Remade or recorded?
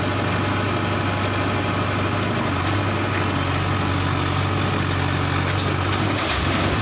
recorded